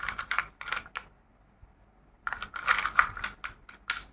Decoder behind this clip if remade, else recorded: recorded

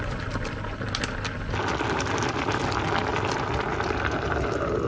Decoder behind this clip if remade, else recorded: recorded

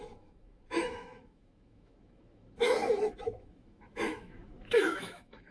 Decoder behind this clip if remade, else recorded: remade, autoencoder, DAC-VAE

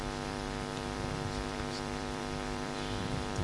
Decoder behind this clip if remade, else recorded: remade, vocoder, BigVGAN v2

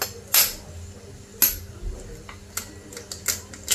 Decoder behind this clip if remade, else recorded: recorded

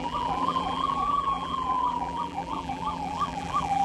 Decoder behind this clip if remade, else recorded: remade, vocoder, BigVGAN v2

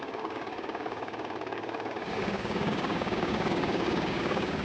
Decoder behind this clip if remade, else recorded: remade, codec, DAC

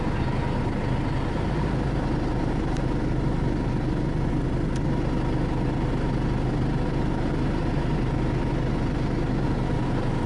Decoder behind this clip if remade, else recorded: recorded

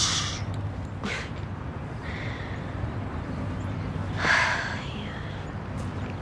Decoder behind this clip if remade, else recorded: recorded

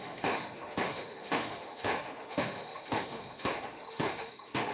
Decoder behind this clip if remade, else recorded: remade, autoencoder, DAC-VAE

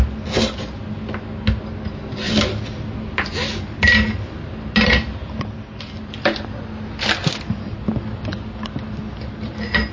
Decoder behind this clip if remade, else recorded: recorded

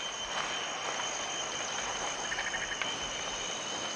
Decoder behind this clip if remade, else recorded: recorded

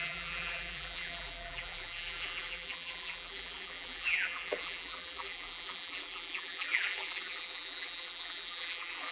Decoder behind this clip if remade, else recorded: remade, vocoder, BigVGAN v2